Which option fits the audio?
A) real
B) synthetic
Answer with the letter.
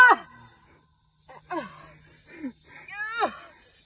A